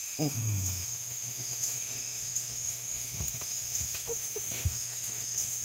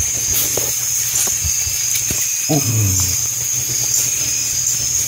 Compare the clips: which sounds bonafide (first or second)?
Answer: second